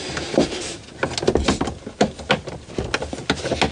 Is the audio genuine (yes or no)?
yes